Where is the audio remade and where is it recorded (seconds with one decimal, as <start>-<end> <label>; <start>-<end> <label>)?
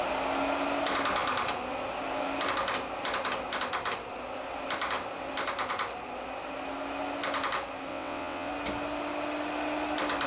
0.0-7.9 recorded; 7.9-8.5 remade; 8.5-10.3 recorded